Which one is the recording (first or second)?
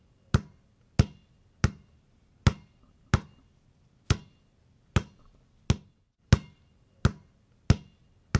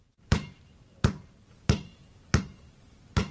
first